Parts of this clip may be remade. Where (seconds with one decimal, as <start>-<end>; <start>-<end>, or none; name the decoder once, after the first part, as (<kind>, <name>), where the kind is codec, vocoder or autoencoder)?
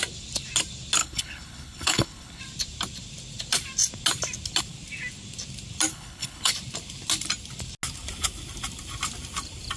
1.0-2.4 (codec, HILCodec); 5.9-6.5